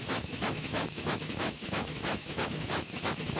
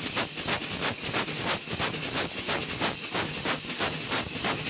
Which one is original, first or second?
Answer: second